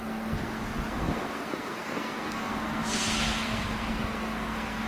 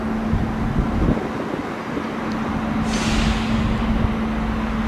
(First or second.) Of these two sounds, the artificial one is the first